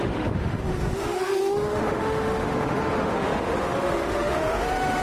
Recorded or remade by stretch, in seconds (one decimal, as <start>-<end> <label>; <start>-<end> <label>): 0.0-5.0 remade